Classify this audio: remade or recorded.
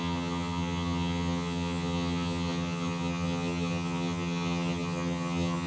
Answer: remade